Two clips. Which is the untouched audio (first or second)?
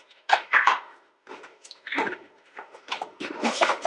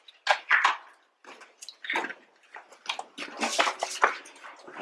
second